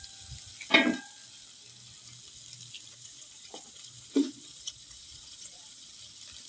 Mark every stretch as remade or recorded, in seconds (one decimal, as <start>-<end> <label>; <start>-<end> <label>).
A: 0.0-2.9 recorded; 2.9-5.9 remade; 5.9-6.5 recorded